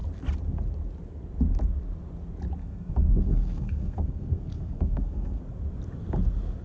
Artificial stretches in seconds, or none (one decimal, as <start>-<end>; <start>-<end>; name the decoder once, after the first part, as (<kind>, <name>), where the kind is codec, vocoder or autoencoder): 2.6-5.4 (codec, SNAC)